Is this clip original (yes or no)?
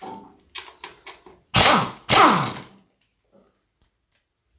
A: yes